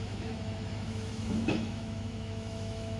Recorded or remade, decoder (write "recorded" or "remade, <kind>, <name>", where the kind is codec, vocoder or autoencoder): remade, autoencoder, DAC-VAE